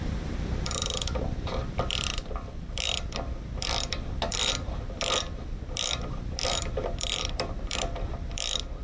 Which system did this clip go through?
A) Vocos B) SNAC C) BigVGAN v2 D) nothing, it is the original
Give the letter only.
C